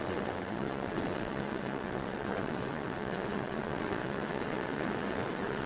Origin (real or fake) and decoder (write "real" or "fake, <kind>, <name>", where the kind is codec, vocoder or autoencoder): fake, vocoder, WaveNeXt